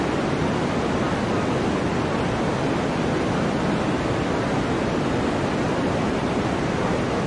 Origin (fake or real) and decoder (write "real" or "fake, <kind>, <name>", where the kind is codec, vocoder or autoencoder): real